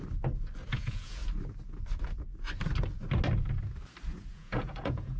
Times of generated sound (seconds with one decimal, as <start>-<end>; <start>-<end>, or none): 0.7-1.2; 4.3-5.2